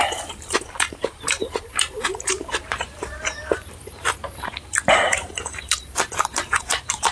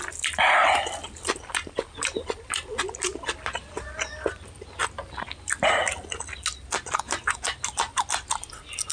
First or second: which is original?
second